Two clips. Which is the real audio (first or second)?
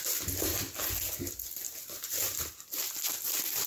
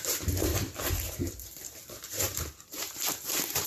first